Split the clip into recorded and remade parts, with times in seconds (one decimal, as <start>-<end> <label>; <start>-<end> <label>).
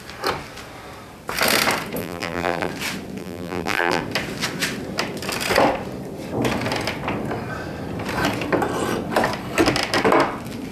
0.0-2.0 recorded; 2.0-2.7 remade; 2.7-3.2 recorded; 3.2-4.0 remade; 4.0-10.7 recorded